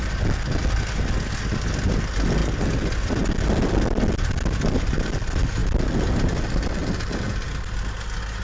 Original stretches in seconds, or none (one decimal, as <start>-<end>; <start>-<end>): 0.0-8.4